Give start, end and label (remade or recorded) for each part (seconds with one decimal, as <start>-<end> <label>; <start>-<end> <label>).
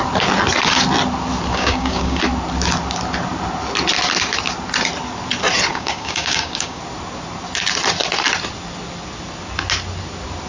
0.0-1.5 recorded; 1.5-2.2 remade; 2.2-5.7 recorded; 5.7-6.8 remade; 6.8-10.5 recorded